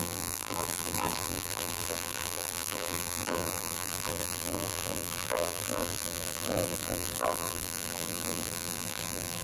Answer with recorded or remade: remade